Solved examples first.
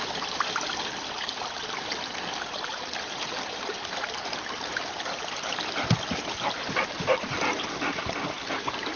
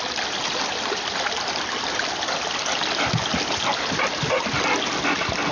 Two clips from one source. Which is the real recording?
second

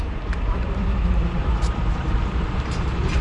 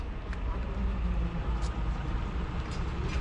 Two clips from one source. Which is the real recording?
second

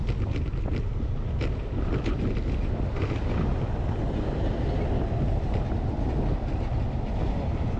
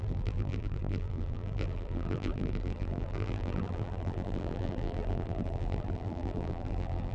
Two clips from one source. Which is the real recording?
first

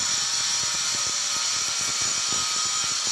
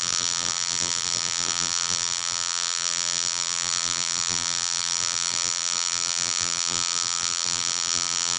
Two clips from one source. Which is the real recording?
first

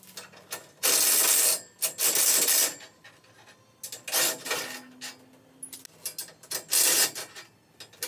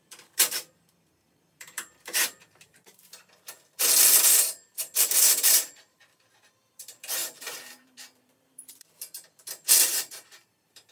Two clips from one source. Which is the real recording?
first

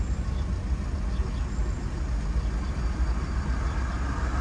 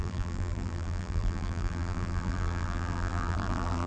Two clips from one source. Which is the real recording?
first